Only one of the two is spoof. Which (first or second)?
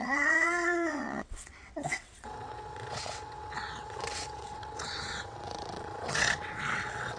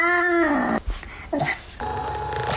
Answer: first